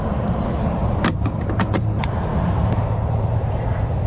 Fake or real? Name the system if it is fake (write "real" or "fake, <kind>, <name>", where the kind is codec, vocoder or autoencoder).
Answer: fake, vocoder, BigVGAN v2